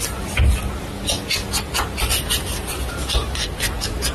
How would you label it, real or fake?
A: real